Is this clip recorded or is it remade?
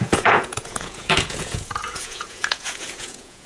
remade